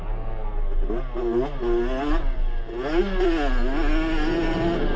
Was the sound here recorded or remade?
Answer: recorded